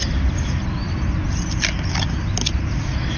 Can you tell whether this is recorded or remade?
recorded